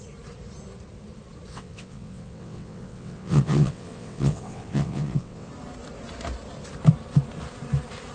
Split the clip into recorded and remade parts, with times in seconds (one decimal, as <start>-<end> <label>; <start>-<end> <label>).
0.0-1.5 recorded; 1.5-5.5 remade; 5.5-8.1 recorded